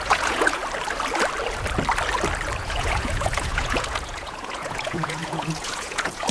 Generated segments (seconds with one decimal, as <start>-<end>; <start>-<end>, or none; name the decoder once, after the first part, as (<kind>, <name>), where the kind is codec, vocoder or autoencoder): 0.0-0.6 (vocoder, Vocos); 2.6-6.3